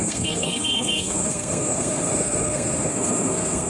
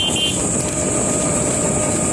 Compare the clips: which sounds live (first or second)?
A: second